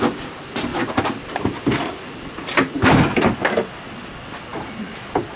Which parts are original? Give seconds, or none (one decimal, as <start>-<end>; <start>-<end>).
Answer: 0.0-5.4

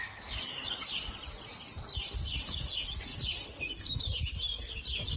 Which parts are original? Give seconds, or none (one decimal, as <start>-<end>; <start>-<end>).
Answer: 0.0-5.2

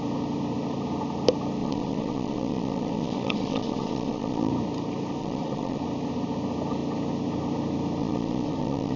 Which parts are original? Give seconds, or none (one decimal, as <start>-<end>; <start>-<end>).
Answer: 0.0-1.6; 4.5-5.2; 5.8-8.0

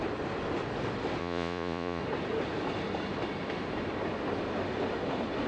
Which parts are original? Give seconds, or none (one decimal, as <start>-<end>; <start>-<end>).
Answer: 0.0-1.2; 2.0-5.5

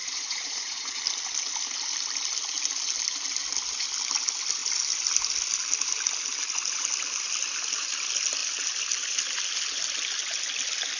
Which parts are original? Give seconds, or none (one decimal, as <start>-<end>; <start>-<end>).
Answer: 1.0-11.0